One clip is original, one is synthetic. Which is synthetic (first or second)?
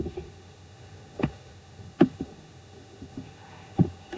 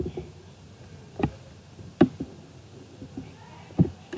first